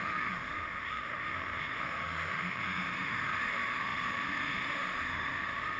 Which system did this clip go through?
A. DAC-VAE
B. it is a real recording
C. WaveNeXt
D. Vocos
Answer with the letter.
A